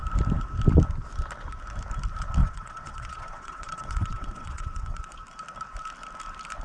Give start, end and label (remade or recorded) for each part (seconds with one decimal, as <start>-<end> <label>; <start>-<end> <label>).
0.0-2.4 recorded; 2.4-5.1 remade; 5.1-6.6 recorded